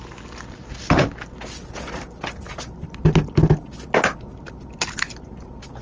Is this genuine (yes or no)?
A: yes